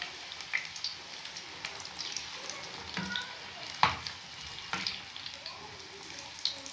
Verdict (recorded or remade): recorded